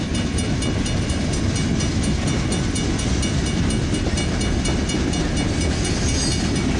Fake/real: real